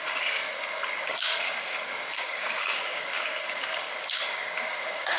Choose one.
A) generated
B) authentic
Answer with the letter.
A